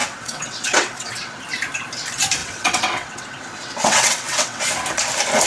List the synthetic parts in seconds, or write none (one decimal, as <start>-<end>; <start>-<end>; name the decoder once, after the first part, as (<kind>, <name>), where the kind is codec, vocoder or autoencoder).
0.0-1.4 (vocoder, WaveNeXt); 2.4-4.6